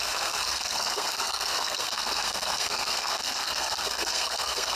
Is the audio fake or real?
fake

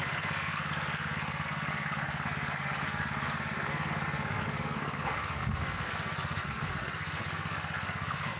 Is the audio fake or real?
fake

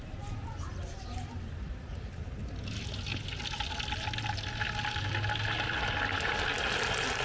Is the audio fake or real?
real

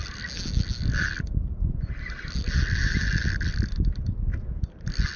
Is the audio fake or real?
real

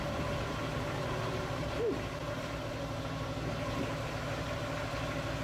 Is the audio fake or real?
real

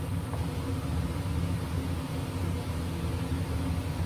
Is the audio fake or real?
real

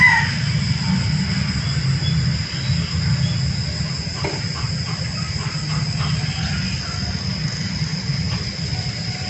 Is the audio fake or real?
real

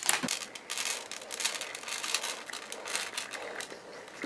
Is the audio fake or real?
real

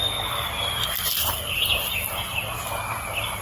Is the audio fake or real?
real